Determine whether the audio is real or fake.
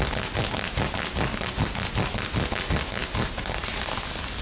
real